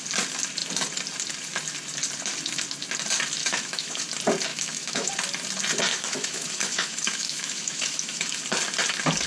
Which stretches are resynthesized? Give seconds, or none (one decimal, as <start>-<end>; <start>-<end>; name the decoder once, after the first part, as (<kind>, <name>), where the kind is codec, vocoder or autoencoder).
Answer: 3.4-4.0 (autoencoder, DAC-VAE); 4.5-5.1; 5.9-8.4